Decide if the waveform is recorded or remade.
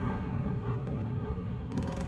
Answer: remade